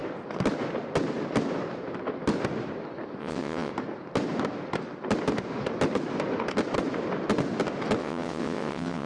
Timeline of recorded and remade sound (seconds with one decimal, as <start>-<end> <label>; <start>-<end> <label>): 0.0-3.2 recorded; 3.2-3.7 remade; 3.7-8.0 recorded; 8.0-9.1 remade